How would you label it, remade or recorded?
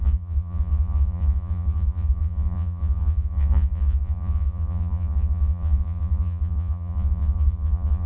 remade